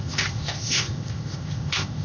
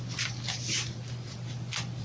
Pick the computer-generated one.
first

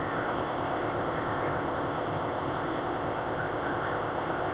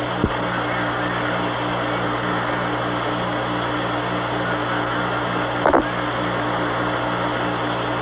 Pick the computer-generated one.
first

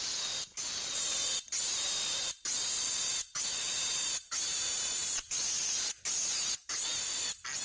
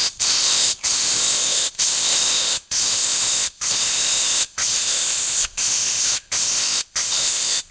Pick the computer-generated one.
second